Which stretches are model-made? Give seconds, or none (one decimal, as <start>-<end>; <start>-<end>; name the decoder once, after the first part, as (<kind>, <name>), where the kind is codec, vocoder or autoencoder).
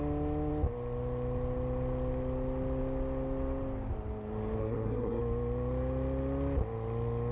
4.6-5.2 (codec, SNAC)